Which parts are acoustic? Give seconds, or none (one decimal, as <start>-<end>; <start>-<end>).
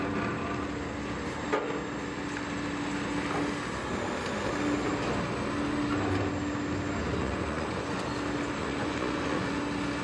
0.0-7.2; 8.0-8.6; 9.6-10.0